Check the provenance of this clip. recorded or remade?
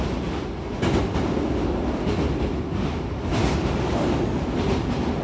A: recorded